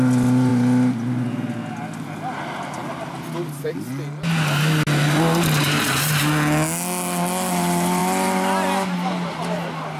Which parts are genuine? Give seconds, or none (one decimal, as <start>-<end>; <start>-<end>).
0.0-10.0